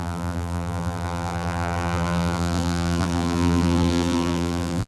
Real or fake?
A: fake